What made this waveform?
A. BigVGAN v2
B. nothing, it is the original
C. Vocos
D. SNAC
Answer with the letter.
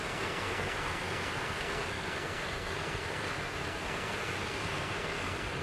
D